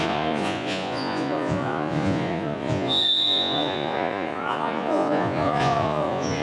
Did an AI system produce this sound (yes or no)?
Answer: yes